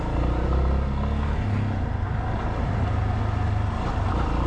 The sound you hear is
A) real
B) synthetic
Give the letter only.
A